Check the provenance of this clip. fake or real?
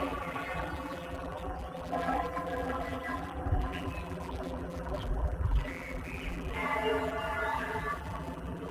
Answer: fake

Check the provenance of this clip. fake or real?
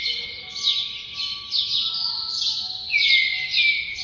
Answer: real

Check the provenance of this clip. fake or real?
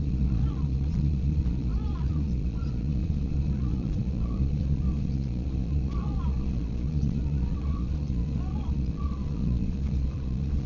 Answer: fake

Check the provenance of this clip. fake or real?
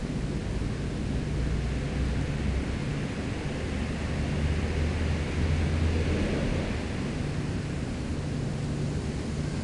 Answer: real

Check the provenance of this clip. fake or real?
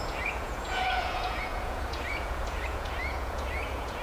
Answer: fake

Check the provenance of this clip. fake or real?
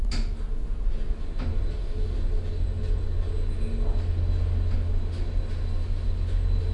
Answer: real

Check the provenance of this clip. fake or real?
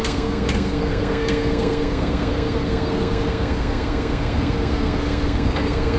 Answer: fake